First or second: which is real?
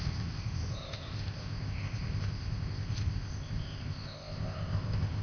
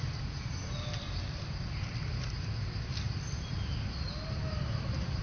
second